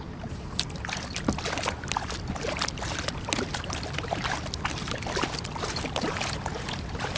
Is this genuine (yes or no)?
yes